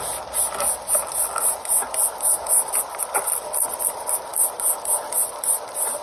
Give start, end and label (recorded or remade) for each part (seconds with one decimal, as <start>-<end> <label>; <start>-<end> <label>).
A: 0.0-6.0 recorded